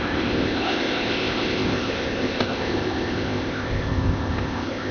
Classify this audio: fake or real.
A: fake